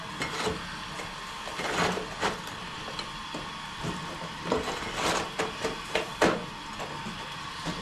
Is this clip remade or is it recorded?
recorded